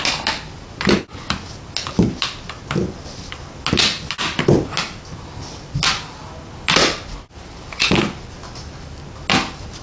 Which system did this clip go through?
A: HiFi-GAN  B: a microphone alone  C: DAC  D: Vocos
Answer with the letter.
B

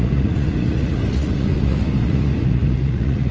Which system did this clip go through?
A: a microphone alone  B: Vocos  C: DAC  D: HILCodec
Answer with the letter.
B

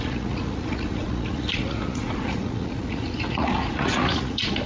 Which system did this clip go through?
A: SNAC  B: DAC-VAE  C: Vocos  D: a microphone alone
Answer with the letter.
C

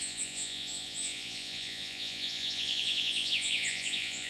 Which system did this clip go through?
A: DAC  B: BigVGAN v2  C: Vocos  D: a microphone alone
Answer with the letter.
C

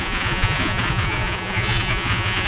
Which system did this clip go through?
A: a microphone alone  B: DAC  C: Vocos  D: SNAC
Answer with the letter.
C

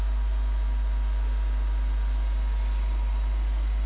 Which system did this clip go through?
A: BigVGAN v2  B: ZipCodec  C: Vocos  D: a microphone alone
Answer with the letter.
D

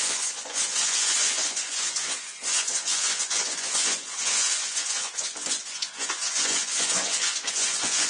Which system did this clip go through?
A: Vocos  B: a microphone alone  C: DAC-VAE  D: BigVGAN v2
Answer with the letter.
A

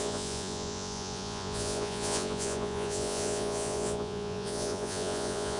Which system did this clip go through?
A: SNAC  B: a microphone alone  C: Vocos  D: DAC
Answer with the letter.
C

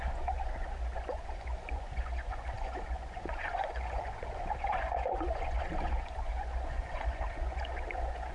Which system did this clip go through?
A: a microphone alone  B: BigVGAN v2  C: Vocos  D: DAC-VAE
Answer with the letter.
C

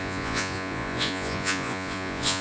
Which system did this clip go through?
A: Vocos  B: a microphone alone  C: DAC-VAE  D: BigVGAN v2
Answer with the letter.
A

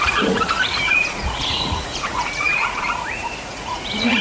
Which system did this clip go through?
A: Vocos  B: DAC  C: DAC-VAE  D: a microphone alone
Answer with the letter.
A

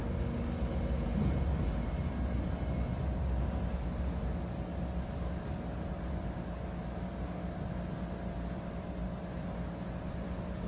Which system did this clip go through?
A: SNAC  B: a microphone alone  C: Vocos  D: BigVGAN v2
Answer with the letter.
B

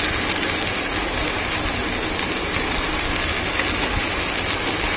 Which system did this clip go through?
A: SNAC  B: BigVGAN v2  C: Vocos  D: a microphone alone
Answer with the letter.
D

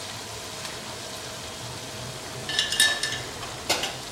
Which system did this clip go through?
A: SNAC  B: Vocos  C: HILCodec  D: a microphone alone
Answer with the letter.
D